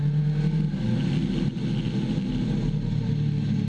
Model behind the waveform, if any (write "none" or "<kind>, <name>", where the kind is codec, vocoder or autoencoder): none